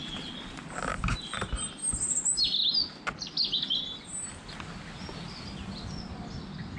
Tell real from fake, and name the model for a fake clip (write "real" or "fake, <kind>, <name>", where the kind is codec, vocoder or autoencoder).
real